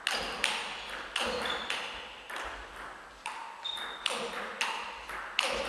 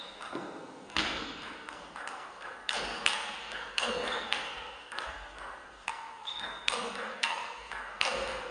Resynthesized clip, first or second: second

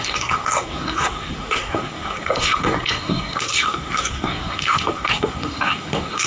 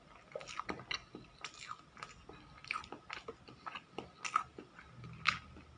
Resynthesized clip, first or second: first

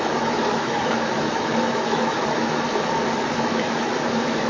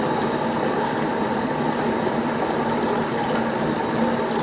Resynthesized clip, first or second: first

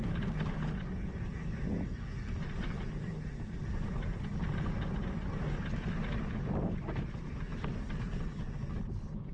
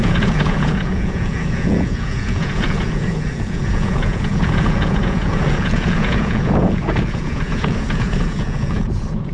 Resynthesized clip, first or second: second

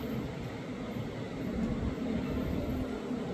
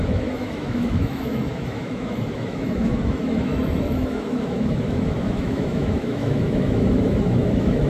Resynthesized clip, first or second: second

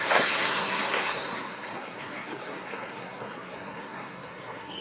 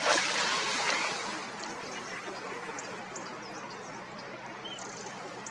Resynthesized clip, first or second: first